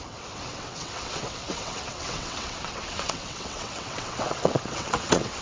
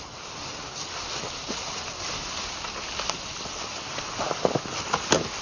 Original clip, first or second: second